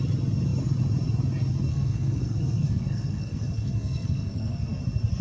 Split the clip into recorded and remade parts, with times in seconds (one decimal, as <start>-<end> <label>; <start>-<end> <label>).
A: 0.0-1.7 recorded; 1.7-4.8 remade; 4.8-5.2 recorded

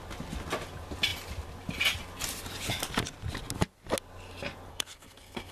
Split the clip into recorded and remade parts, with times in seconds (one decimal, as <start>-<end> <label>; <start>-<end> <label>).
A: 0.0-4.7 recorded; 4.7-5.5 remade

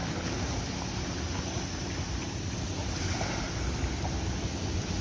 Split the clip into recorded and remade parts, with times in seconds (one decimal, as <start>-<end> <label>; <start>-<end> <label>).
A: 0.0-5.0 recorded

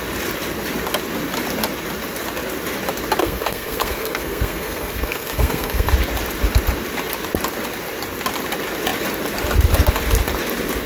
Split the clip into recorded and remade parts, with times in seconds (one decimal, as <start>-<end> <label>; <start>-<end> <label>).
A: 0.0-3.2 recorded; 3.2-5.9 remade; 5.9-10.9 recorded